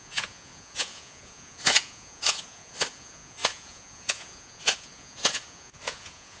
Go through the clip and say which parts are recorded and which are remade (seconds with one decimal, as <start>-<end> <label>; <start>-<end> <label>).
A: 0.0-6.4 remade

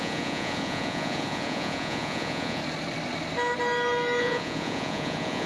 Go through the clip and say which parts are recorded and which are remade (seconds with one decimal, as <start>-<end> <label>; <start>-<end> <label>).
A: 0.0-2.6 remade; 2.6-4.2 recorded; 4.2-5.5 remade

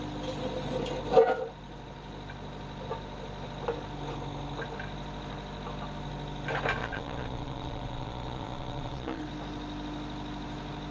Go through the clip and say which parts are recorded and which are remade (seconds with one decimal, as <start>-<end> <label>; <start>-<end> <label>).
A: 0.0-6.8 recorded; 6.8-9.2 remade; 9.2-10.9 recorded

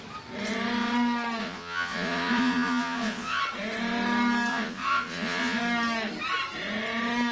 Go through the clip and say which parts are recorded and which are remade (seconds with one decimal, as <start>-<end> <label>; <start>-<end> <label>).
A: 0.0-1.4 recorded; 1.4-3.4 remade; 3.4-4.5 recorded; 4.5-5.6 remade; 5.6-7.3 recorded

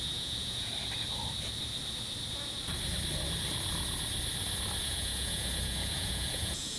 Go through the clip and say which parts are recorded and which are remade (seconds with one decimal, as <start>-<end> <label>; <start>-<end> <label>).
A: 0.0-0.7 remade; 0.7-4.8 recorded; 4.8-6.8 remade

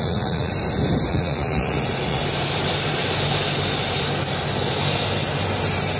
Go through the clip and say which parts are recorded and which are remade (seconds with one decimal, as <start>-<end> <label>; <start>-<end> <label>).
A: 0.0-0.5 remade; 0.5-1.1 recorded; 1.1-2.2 remade; 2.2-6.0 recorded

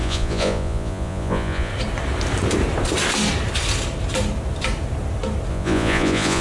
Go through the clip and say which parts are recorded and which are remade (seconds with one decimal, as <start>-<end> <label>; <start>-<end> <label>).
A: 0.0-1.7 remade; 1.7-5.5 recorded; 5.5-6.4 remade